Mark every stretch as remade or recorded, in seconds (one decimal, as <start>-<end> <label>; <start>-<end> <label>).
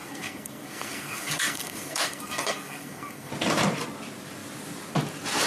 0.0-3.3 remade; 3.3-5.5 recorded